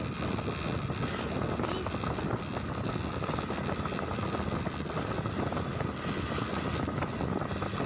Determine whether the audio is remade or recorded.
recorded